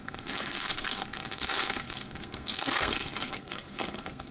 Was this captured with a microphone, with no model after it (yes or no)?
no